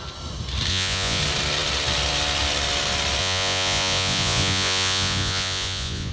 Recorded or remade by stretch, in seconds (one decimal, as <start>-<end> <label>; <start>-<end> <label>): 0.0-0.7 recorded; 0.7-1.2 remade; 1.2-3.2 recorded; 3.2-6.1 remade